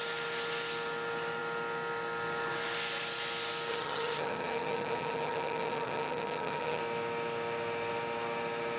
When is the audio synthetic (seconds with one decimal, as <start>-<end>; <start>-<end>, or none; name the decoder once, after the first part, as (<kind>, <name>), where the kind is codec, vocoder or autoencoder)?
3.7-6.8 (vocoder, HiFi-GAN)